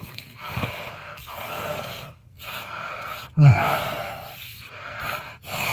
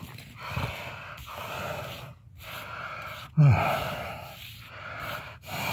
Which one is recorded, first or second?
second